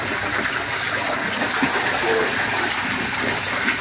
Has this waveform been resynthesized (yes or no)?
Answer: yes